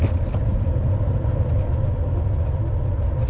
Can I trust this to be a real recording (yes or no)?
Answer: yes